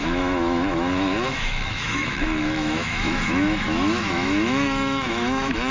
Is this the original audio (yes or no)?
no